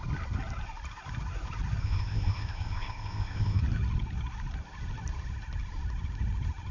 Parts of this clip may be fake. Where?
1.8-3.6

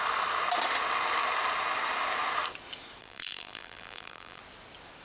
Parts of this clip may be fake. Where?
3.0-4.4

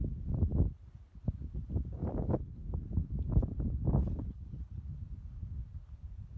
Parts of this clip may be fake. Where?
4.0-4.8